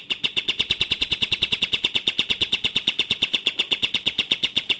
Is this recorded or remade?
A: remade